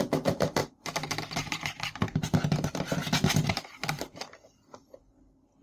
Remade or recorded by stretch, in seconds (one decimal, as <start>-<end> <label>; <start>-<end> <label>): 0.0-5.6 remade